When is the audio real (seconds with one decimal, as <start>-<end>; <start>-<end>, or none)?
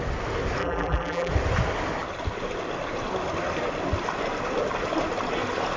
0.0-0.6; 1.3-5.8